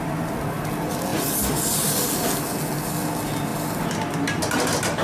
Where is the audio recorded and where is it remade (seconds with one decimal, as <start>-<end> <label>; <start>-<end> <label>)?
0.0-5.0 recorded